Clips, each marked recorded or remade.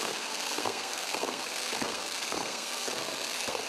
remade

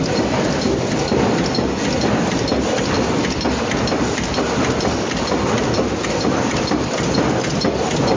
remade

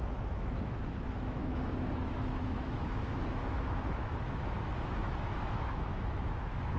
remade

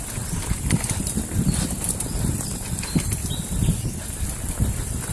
recorded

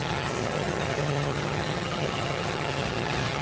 remade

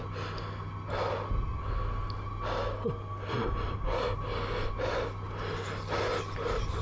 recorded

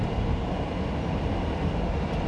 recorded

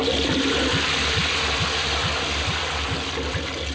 recorded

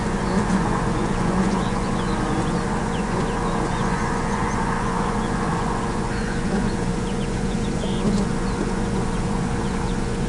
remade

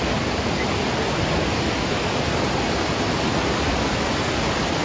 recorded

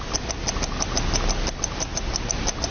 recorded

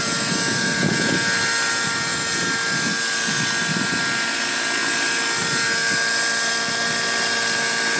recorded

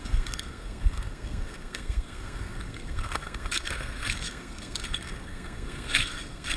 remade